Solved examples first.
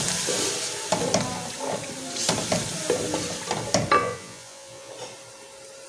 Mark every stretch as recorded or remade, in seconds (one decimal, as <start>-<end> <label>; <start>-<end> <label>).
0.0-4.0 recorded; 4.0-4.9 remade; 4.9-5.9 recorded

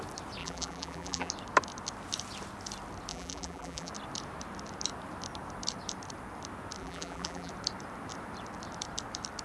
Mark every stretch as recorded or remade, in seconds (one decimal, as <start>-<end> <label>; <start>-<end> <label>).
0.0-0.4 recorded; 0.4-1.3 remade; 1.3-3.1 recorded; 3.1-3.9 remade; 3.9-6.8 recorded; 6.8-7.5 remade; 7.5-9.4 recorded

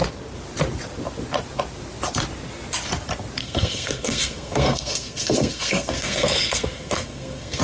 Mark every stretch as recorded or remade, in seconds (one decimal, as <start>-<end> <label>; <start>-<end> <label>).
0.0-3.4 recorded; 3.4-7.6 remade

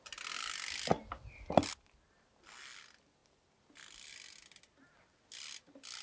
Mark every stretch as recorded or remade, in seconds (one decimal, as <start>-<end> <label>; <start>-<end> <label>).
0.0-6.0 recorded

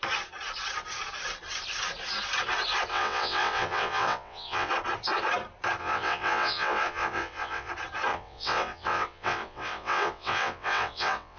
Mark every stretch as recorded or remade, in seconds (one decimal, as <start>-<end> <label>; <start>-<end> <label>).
0.0-2.9 recorded; 2.9-4.7 remade; 4.7-5.8 recorded; 5.8-7.7 remade; 7.7-8.1 recorded; 8.1-11.4 remade

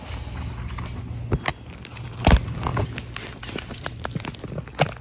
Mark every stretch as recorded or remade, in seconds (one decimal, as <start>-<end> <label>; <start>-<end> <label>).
0.0-1.5 recorded; 1.5-2.2 remade; 2.2-2.7 recorded; 2.7-4.4 remade; 4.4-5.0 recorded